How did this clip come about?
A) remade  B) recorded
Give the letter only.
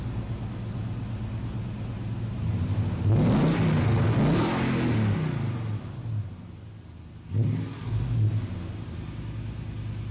B